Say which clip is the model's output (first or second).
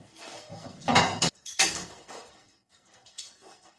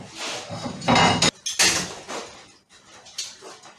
first